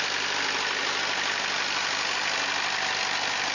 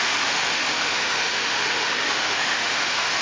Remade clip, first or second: second